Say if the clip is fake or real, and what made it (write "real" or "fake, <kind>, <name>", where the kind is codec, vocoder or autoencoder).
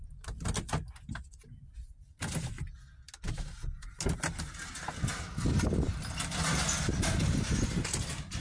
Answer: real